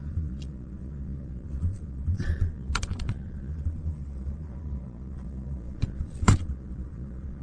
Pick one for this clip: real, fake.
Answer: fake